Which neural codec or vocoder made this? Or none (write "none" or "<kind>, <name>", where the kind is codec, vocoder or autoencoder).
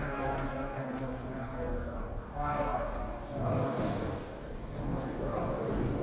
codec, DAC